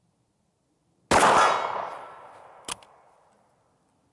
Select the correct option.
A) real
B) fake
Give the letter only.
A